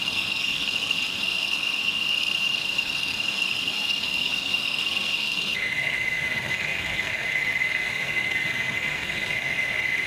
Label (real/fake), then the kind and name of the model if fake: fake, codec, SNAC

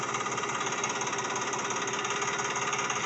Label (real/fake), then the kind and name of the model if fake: real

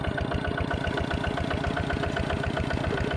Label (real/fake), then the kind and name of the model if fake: real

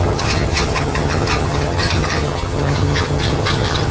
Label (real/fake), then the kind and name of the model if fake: fake, vocoder, HiFi-GAN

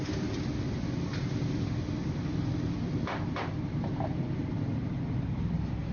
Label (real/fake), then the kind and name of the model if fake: real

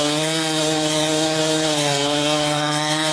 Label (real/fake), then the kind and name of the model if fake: fake, codec, SNAC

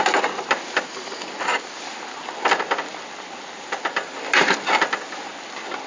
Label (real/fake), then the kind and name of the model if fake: real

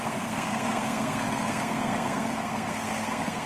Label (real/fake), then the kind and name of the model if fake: fake, codec, SNAC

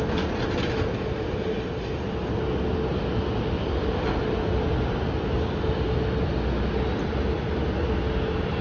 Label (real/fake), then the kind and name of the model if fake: real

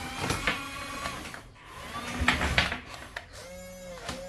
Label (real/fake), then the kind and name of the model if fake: real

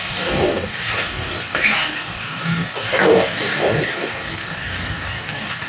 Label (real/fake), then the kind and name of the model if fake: fake, codec, DAC